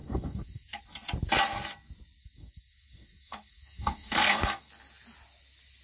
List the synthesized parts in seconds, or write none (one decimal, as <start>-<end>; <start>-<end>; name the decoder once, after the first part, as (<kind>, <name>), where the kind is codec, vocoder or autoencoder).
0.0-0.8 (codec, SNAC); 2.2-4.7